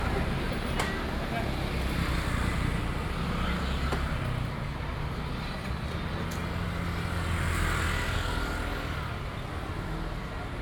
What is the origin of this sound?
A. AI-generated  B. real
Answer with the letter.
B